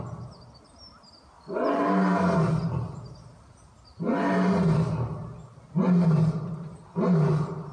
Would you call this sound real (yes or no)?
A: yes